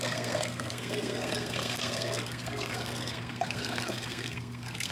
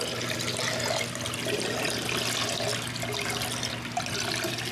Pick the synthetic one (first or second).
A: first